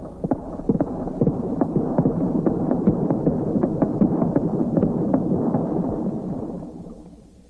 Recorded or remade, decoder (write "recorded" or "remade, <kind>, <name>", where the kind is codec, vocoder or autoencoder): remade, vocoder, BigVGAN v2